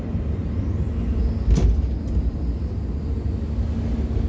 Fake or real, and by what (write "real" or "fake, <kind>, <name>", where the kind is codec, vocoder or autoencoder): real